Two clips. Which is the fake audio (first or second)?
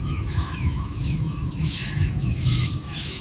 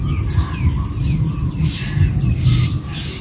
first